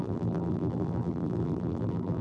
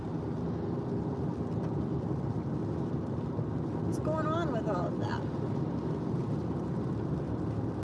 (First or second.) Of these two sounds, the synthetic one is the first